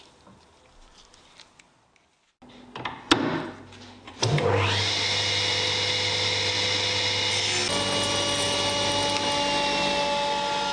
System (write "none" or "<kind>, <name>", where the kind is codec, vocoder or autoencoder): none